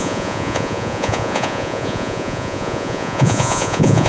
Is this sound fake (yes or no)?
yes